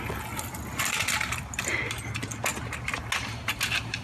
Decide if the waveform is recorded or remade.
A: recorded